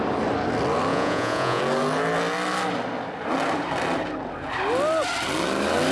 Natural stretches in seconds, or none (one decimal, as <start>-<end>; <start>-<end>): 0.0-0.9; 1.6-5.9